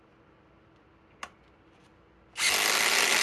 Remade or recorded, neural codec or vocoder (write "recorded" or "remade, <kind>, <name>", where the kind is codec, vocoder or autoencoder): recorded